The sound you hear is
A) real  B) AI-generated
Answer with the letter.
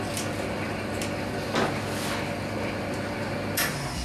A